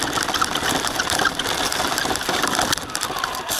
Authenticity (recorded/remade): recorded